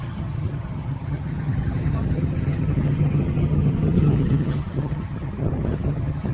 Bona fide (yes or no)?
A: no